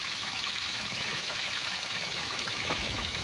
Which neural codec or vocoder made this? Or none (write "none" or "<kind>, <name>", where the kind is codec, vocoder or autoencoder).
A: autoencoder, DAC-VAE